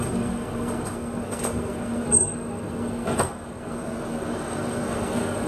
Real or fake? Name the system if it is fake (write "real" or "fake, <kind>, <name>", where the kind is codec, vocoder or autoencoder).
fake, codec, SNAC